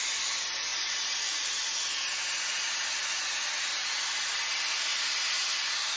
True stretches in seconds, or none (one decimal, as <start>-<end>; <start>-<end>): 0.0-0.7; 1.9-6.0